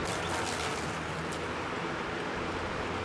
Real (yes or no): yes